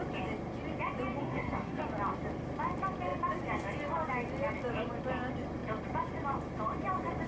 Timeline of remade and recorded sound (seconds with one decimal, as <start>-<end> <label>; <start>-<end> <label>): 0.0-1.2 recorded; 1.2-1.8 remade; 1.8-7.3 recorded